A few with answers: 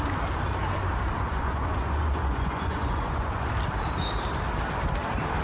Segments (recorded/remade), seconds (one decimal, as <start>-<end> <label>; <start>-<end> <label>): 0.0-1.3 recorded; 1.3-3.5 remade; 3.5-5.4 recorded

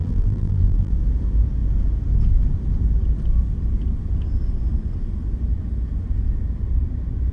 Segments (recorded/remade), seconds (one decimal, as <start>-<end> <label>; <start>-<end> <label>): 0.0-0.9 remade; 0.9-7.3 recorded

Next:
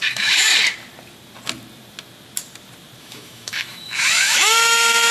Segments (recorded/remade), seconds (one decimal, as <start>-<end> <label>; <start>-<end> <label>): 0.0-0.5 remade; 0.5-3.0 recorded; 3.0-5.1 remade

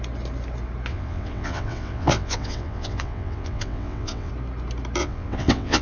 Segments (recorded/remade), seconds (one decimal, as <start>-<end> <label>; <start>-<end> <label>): 0.0-0.9 recorded; 0.9-4.3 remade; 4.3-5.0 recorded; 5.0-5.8 remade

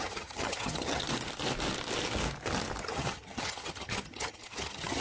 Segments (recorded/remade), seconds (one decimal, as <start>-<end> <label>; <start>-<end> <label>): 0.0-1.0 remade; 1.0-2.8 recorded; 2.8-5.0 remade

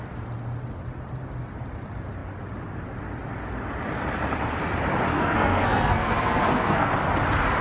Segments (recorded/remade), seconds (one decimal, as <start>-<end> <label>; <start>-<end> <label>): 0.0-5.1 recorded; 5.1-6.9 remade; 6.9-7.6 recorded

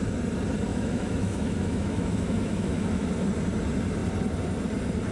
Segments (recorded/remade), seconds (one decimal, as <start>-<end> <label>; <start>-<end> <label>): 0.0-0.7 recorded; 0.7-3.1 remade; 3.1-5.1 recorded

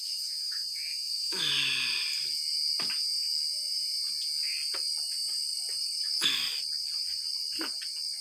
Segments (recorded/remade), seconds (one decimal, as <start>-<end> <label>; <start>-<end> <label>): 0.0-1.5 remade; 1.5-8.2 recorded